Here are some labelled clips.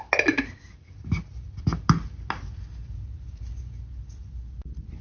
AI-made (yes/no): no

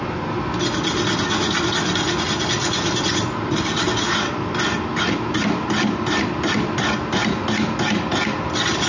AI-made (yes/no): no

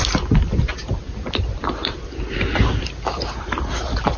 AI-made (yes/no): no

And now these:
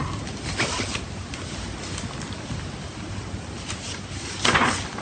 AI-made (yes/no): no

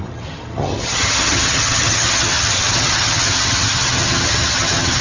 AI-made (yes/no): yes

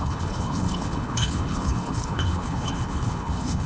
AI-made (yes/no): yes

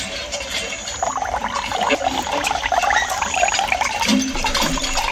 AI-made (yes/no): no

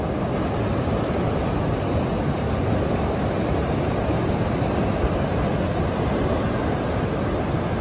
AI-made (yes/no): no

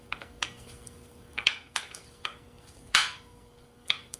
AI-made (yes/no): yes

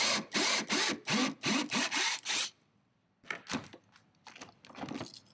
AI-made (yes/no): no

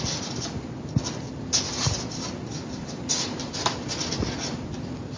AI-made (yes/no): no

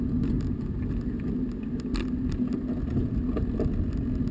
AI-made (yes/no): no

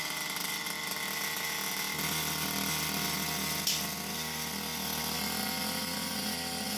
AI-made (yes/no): no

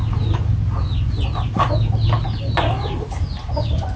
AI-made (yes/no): no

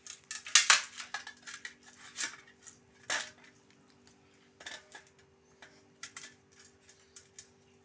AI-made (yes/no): no